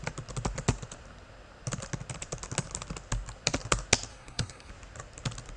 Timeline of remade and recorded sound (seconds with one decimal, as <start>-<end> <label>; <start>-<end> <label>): 0.0-4.1 recorded; 4.1-4.7 remade; 4.7-5.6 recorded